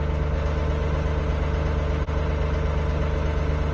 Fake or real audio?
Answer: real